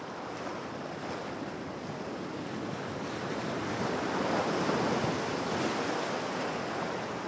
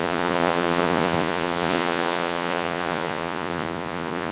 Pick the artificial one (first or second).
second